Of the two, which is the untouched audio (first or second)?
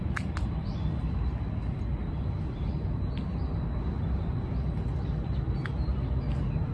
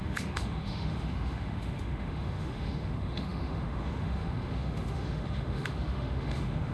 first